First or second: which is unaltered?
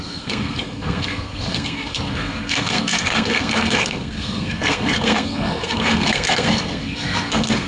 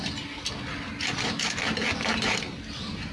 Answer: second